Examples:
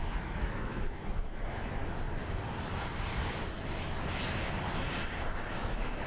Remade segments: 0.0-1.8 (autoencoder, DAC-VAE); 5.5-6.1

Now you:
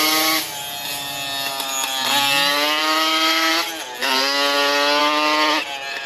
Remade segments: 2.8-3.5 (autoencoder, DAC-VAE)

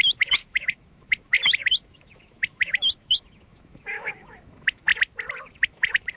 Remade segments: 0.0-4.9 (autoencoder, DAC-VAE); 5.4-6.2

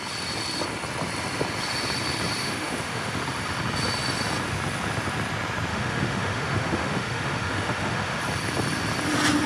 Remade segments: 2.4-3.2 (autoencoder, DAC-VAE); 5.7-8.2

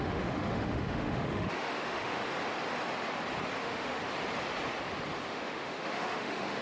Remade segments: 0.0-2.2 (autoencoder, DAC-VAE); 3.6-4.0; 5.3-6.6

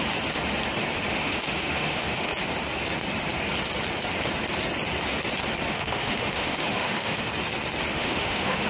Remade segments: 1.1-2.3 (autoencoder, DAC-VAE); 5.7-7.3; 7.9-8.7

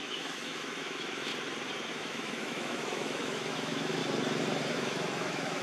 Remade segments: 0.0-1.3 (autoencoder, DAC-VAE); 1.9-4.0; 4.7-5.6

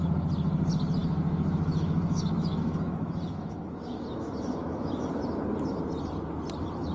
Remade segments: 1.0-5.1 (autoencoder, DAC-VAE)